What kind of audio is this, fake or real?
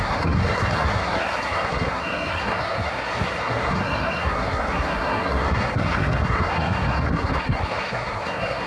fake